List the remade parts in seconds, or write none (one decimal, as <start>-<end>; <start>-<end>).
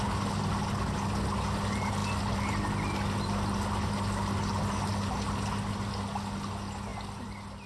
none